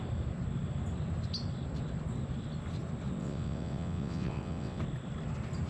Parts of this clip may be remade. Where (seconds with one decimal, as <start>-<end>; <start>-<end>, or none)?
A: 3.2-4.8